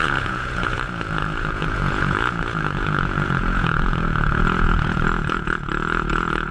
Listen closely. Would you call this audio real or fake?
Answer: fake